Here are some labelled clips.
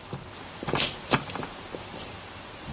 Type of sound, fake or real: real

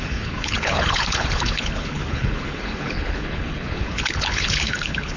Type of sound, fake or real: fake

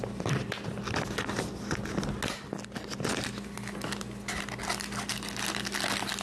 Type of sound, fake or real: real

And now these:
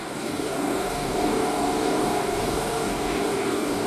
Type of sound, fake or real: fake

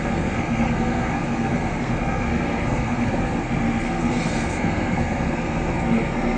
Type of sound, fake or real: fake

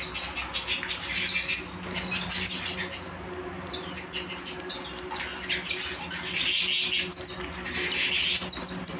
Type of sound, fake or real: real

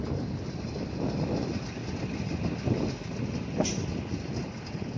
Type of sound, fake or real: real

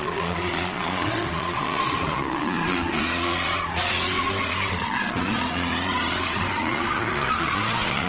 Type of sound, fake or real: fake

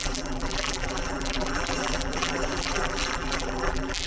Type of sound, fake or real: fake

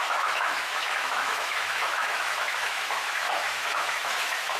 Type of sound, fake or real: fake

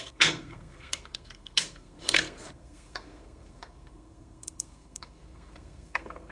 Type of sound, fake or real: fake